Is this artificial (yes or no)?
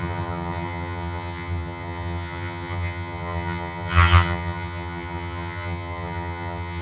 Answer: yes